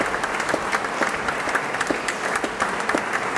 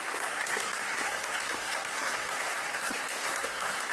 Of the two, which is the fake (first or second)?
second